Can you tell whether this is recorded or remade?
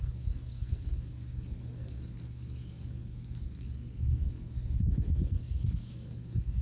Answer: remade